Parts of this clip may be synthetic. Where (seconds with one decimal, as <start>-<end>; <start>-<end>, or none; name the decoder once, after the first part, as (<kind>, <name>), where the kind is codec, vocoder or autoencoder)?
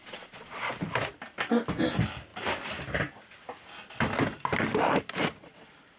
0.0-0.7 (vocoder, Vocos)